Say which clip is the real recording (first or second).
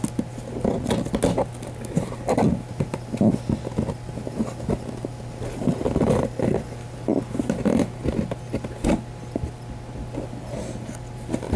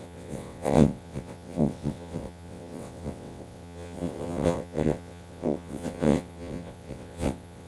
first